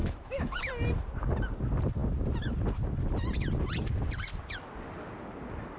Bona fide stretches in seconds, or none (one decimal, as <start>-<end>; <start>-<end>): 0.7-5.8